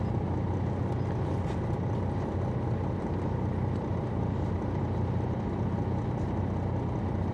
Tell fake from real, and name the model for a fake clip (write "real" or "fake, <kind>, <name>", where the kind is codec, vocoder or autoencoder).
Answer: real